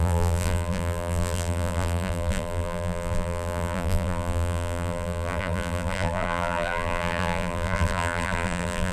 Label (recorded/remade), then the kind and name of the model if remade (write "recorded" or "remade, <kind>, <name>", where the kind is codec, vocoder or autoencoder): remade, vocoder, BigVGAN v2